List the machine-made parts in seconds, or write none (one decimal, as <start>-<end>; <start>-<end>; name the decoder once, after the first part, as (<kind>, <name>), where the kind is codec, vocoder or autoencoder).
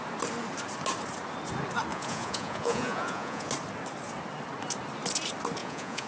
1.9-3.5 (vocoder, Vocos); 5.6-6.1